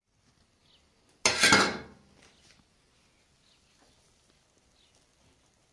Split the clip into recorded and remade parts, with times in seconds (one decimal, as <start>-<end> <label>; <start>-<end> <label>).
0.0-5.7 recorded